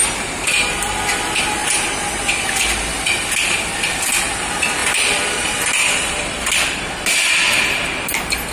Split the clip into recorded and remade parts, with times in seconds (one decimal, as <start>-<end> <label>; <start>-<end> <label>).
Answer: 0.0-4.8 recorded; 4.8-6.8 remade; 6.8-8.5 recorded